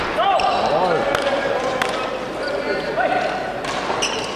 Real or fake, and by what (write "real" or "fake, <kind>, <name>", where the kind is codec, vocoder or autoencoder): real